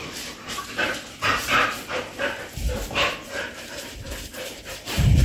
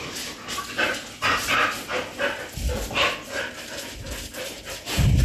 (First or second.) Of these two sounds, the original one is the second